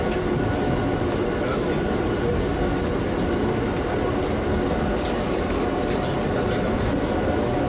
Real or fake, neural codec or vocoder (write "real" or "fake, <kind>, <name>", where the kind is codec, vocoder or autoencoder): real